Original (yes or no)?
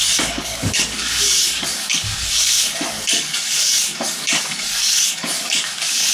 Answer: no